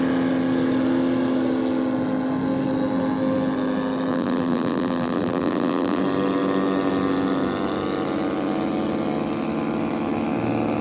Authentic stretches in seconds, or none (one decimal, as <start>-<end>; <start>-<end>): 0.0-4.1; 6.0-10.8